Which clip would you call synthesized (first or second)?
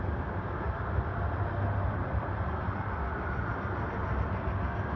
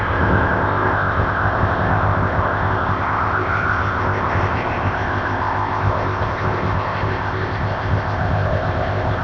second